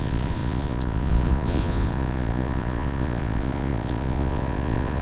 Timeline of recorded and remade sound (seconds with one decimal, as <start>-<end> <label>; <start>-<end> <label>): 0.0-5.0 remade